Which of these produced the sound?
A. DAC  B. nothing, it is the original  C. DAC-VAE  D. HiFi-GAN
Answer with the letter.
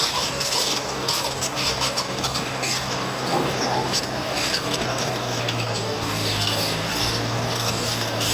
A